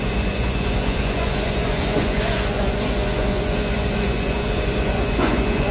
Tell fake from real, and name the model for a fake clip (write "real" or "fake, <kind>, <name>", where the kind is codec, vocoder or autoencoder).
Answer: fake, vocoder, Vocos